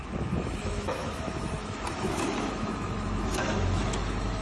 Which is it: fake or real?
fake